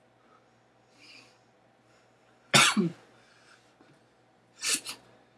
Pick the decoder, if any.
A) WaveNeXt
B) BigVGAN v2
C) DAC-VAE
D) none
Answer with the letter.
D